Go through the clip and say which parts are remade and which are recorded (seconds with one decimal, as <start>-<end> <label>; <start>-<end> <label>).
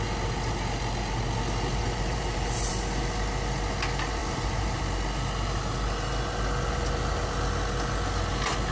0.0-1.8 recorded; 1.8-2.7 remade; 2.7-4.2 recorded; 4.2-4.8 remade; 4.8-8.7 recorded